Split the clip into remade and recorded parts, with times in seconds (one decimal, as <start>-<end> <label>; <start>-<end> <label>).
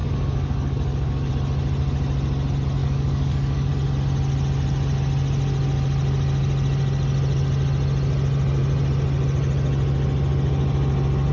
0.0-1.3 remade; 1.3-2.8 recorded; 2.8-3.7 remade; 3.7-11.3 recorded